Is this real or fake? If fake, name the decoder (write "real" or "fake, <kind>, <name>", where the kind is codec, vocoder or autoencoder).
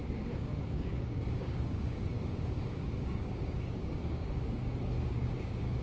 fake, codec, DAC